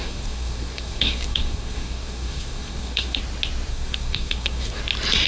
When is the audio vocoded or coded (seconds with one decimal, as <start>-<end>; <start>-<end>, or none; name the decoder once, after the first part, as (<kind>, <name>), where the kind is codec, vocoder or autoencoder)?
0.0-3.2 (codec, SNAC); 3.7-4.8